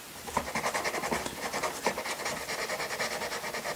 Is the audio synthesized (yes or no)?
no